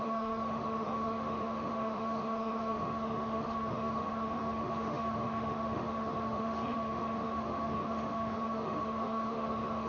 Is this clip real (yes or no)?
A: no